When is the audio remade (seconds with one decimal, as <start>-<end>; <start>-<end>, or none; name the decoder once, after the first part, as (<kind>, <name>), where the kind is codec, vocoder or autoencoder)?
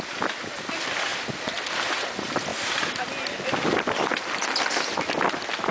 none